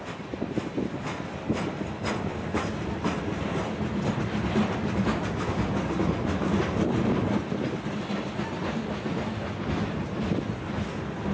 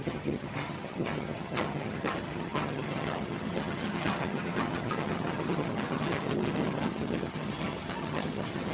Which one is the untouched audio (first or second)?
first